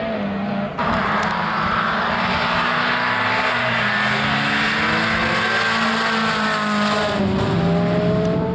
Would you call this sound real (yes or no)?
yes